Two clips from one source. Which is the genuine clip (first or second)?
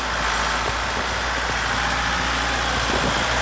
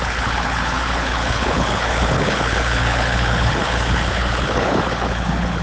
first